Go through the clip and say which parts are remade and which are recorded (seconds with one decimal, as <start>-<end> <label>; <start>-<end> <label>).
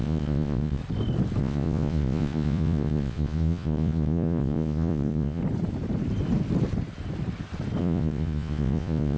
0.0-0.8 remade; 0.8-1.4 recorded; 1.4-5.4 remade; 5.4-7.8 recorded; 7.8-9.2 remade